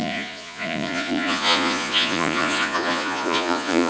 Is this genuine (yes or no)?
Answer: no